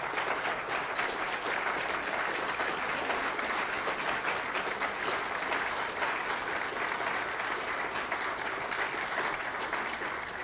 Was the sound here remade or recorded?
recorded